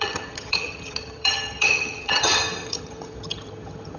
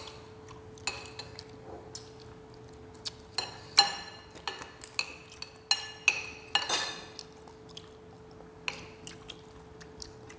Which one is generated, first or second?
first